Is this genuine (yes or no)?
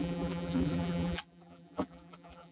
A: no